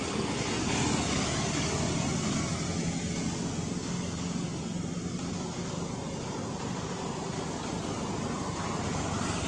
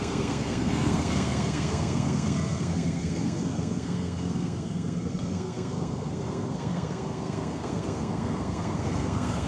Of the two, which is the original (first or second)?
first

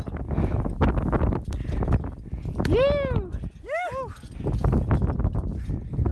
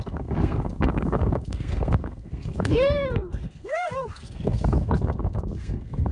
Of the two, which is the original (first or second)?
first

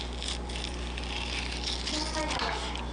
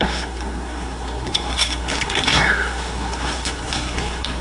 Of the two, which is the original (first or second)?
first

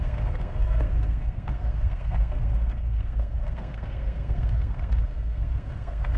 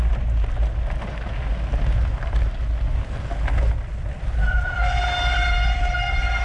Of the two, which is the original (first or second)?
second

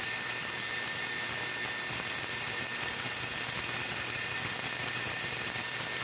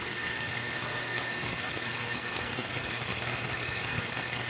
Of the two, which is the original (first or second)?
first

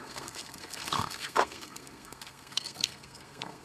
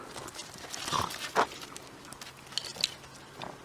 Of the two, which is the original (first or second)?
second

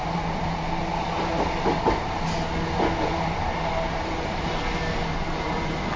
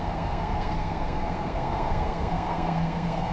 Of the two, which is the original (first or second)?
first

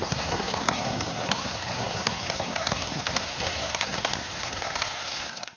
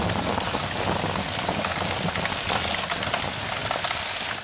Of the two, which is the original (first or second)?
second